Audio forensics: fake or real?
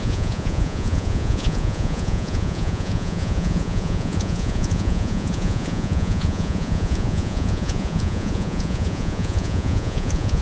fake